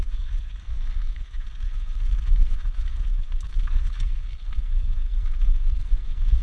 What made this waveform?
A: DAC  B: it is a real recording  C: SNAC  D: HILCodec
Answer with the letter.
C